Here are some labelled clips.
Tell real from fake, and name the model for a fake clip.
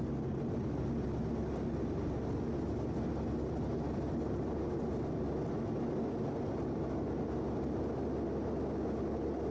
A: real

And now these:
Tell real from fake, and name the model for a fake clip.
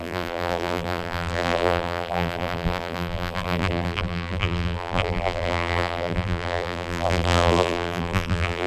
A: fake, vocoder, BigVGAN v2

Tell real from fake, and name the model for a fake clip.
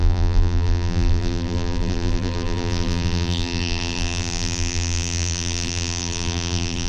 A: fake, vocoder, BigVGAN v2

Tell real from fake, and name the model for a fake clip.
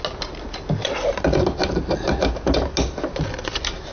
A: real